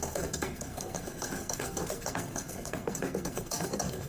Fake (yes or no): yes